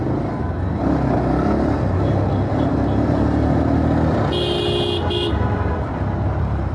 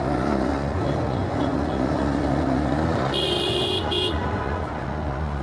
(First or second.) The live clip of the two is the first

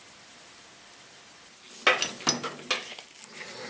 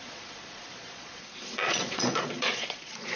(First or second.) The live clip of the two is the first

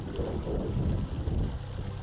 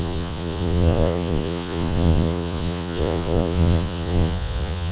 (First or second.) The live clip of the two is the first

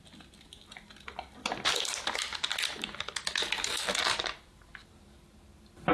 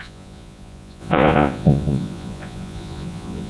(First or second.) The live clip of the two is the first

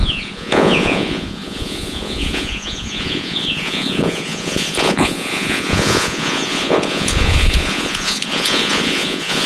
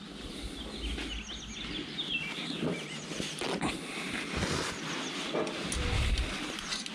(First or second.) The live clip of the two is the second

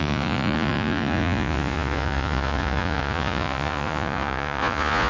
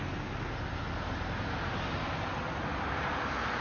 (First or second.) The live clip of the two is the second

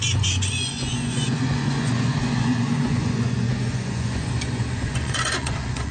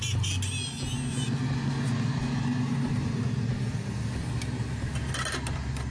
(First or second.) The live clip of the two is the second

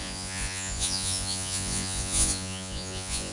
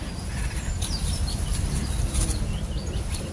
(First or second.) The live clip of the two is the second